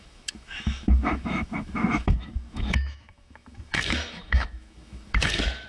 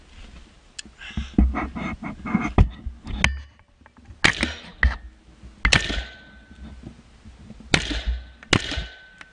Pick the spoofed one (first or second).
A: first